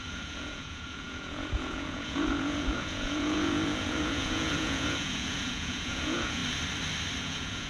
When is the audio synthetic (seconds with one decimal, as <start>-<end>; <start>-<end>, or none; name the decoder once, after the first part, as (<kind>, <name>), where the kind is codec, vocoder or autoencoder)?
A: 0.0-6.4 (vocoder, Vocos); 7.2-7.7